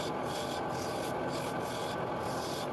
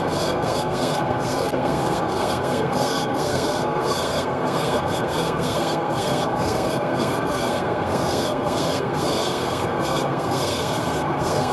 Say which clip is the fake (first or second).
second